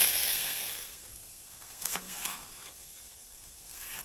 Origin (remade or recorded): remade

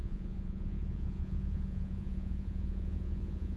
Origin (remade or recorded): remade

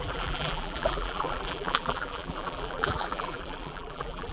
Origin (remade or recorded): remade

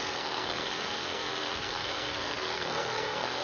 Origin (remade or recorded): remade